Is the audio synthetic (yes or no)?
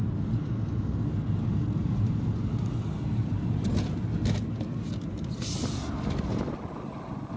no